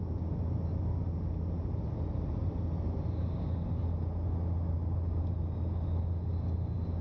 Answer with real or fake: real